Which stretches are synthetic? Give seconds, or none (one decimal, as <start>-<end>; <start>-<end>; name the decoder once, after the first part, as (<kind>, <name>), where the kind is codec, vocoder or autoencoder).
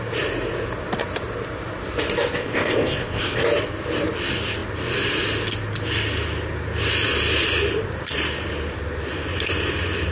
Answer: 2.4-3.4 (codec, ZipCodec)